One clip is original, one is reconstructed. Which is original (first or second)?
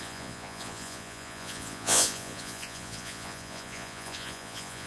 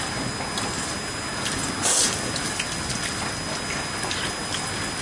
second